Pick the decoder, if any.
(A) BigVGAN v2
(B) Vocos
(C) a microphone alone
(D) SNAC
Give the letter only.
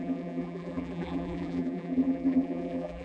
A